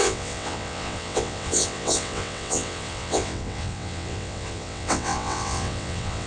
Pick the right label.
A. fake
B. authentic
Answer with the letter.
A